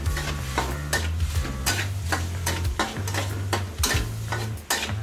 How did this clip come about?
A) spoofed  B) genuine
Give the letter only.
B